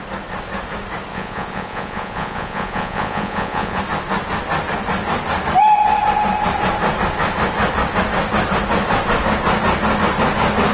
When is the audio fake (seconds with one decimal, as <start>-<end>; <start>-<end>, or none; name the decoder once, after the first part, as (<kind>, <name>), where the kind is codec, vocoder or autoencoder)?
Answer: 1.1-3.8 (vocoder, Vocos)

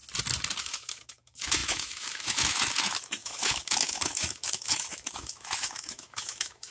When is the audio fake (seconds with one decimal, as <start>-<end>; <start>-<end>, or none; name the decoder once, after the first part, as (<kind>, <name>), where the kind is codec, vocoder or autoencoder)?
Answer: 0.6-6.7 (autoencoder, DAC-VAE)

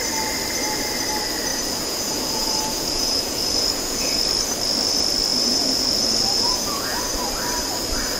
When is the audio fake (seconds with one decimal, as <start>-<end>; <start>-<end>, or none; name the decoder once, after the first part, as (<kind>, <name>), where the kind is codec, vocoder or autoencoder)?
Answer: 1.5-4.2 (vocoder, Vocos); 5.3-7.0

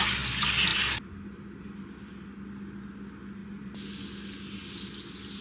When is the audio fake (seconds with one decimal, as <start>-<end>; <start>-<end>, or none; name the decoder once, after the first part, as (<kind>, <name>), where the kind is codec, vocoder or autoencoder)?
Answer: none

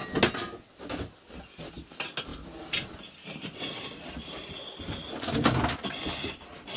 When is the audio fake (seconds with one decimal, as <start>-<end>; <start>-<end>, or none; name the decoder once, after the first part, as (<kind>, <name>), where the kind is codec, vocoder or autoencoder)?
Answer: none

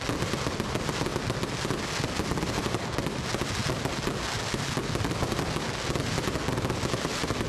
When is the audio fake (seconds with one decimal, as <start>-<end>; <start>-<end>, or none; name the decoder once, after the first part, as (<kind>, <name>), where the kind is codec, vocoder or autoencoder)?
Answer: none

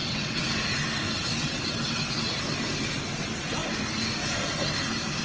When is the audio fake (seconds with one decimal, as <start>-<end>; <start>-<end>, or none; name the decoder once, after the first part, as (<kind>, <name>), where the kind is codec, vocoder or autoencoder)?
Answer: 0.0-0.5 (vocoder, WaveNeXt); 1.3-2.2

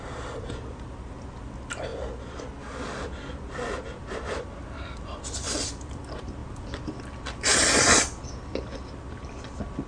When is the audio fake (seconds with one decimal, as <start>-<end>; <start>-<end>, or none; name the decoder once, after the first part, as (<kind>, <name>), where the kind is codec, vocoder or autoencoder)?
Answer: none